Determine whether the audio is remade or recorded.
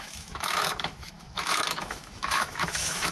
remade